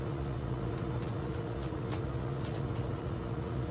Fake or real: fake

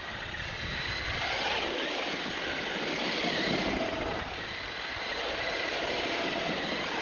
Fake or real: real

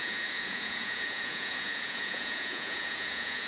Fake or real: fake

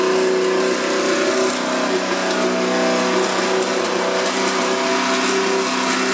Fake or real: real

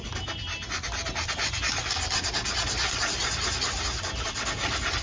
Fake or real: real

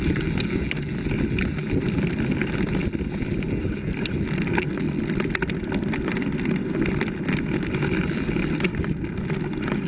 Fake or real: real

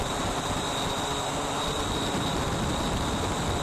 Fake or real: real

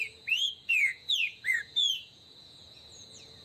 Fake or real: fake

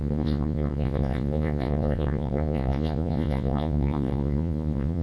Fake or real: fake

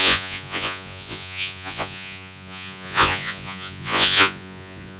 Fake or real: fake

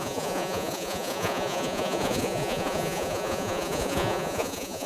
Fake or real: fake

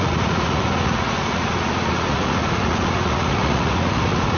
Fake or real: fake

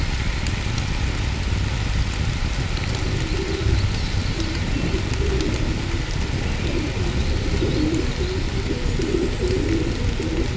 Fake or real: real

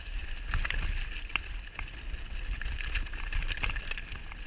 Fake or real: real